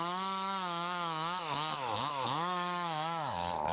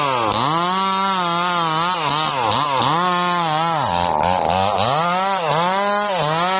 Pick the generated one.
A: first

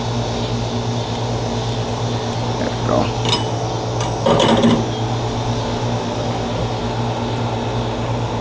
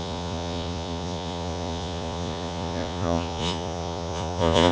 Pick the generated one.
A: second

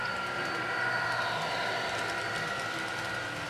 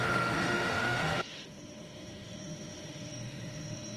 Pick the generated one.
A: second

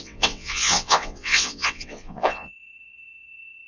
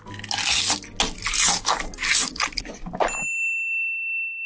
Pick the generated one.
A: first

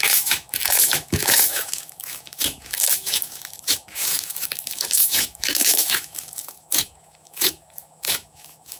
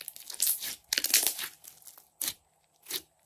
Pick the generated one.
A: first